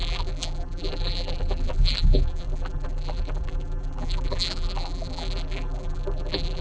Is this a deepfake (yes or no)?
yes